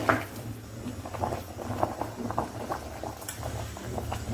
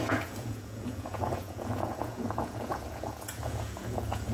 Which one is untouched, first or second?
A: first